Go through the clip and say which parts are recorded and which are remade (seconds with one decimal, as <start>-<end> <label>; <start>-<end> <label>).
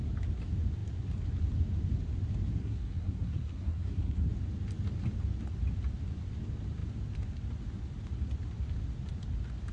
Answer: 0.0-2.6 recorded; 2.6-4.3 remade; 4.3-9.7 recorded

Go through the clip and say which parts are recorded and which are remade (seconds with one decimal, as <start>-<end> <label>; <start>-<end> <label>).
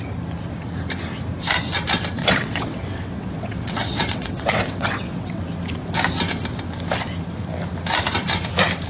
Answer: 0.0-2.2 recorded; 2.2-5.4 remade; 5.4-8.9 recorded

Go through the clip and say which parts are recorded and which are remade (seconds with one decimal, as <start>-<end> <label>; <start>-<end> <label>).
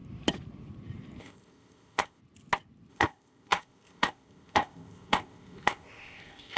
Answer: 0.0-1.2 recorded; 1.2-2.2 remade; 2.2-2.9 recorded; 2.9-6.6 remade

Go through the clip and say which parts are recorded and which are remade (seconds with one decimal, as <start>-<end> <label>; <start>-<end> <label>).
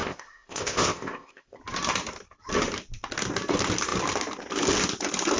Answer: 0.0-1.6 remade; 1.6-5.4 recorded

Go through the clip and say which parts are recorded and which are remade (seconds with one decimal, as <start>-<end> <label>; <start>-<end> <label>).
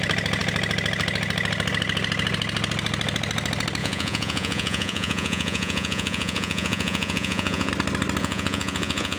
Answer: 0.0-3.8 recorded; 3.8-7.7 remade; 7.7-8.2 recorded; 8.2-9.2 remade